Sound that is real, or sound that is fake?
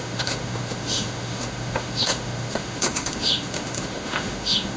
fake